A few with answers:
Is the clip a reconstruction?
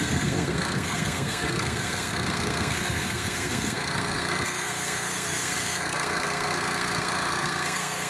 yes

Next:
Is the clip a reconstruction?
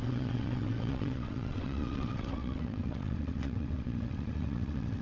yes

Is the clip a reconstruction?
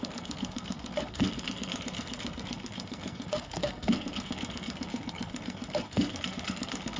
yes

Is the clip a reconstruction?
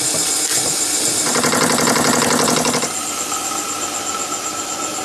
no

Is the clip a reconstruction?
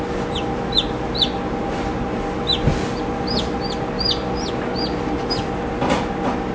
no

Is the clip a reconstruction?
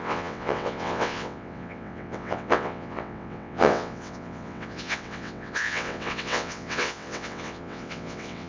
yes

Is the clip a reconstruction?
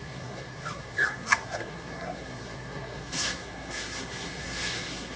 yes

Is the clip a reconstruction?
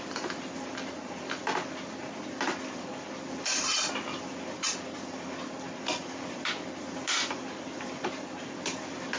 no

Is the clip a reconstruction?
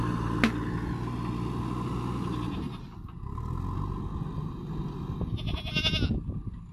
no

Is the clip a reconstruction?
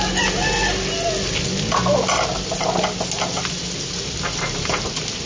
no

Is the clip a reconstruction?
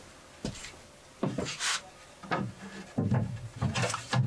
no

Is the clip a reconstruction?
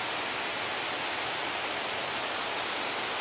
no